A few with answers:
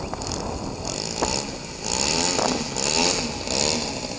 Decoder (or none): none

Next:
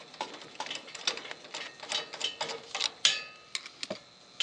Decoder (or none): none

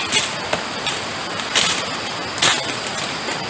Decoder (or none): none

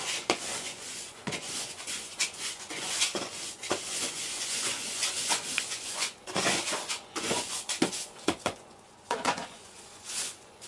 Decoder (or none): vocoder, Vocos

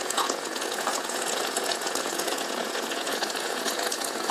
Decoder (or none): vocoder, Vocos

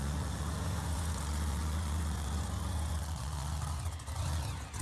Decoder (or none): vocoder, Vocos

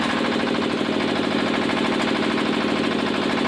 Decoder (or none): none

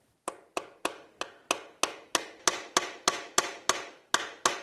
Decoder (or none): none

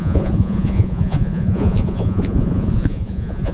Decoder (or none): vocoder, Vocos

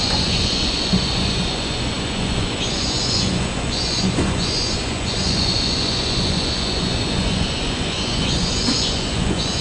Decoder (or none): vocoder, Vocos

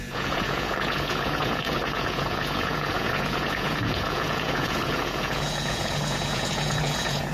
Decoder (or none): vocoder, Vocos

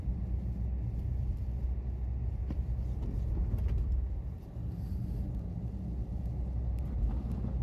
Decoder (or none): none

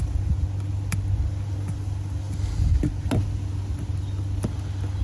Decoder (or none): none